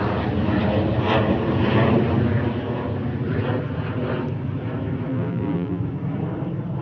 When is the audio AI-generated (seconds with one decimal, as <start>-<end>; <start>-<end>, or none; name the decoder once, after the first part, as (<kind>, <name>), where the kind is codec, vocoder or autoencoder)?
5.1-5.8 (vocoder, BigVGAN v2)